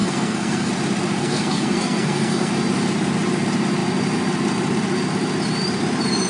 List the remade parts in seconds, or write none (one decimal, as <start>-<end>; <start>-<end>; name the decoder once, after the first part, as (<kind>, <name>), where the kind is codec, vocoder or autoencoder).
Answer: 0.0-0.7 (codec, SNAC); 1.2-2.5